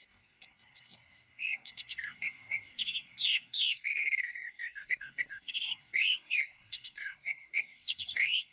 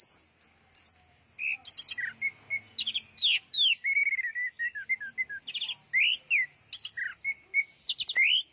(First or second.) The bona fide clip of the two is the second